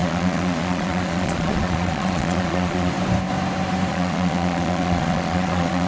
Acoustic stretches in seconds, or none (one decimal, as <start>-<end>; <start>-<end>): 2.9-3.9